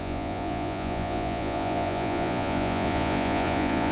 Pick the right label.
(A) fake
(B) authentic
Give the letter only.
A